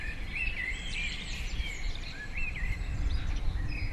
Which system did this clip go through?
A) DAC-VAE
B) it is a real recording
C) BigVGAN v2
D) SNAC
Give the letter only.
C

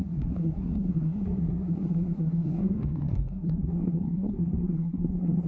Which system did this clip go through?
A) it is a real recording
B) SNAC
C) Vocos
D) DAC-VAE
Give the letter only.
B